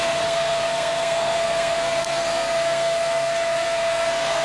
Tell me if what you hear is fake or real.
fake